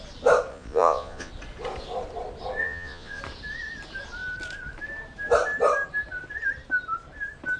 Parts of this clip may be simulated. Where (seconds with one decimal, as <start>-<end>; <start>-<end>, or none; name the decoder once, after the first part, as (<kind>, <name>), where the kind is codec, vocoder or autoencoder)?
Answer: 0.5-1.3 (vocoder, Vocos); 2.6-3.2